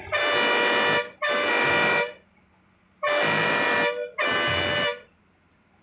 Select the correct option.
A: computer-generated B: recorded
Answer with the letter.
B